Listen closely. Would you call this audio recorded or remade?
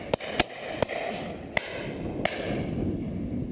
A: recorded